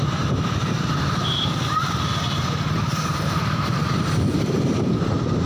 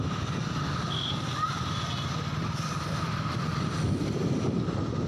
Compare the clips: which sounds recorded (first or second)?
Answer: second